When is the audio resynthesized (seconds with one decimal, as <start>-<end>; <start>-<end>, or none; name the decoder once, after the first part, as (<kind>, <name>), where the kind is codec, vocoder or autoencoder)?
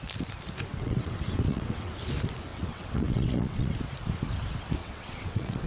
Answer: 0.7-1.9 (vocoder, WaveNeXt); 2.5-3.7; 4.8-5.7